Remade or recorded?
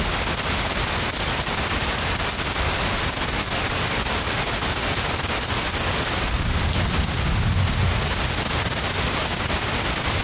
recorded